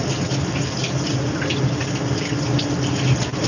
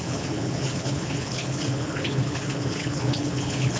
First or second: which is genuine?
first